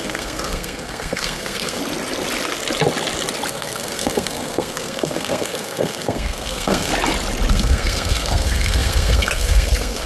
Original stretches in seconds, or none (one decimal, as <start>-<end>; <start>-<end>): 1.8-3.5; 6.9-7.5